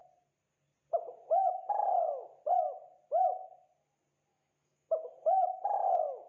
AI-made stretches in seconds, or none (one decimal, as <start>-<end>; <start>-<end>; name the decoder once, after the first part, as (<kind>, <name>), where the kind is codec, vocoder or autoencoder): 4.3-5.1 (autoencoder, DAC-VAE)